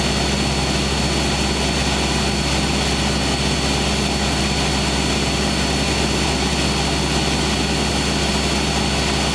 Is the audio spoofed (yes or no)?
no